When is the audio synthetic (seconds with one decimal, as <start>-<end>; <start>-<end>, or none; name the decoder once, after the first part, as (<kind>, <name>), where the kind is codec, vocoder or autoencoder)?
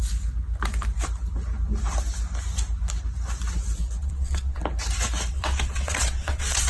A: 4.0-4.6 (vocoder, WaveNeXt); 5.3-6.7